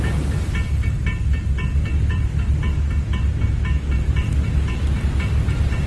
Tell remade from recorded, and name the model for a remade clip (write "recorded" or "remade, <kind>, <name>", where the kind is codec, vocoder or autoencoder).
recorded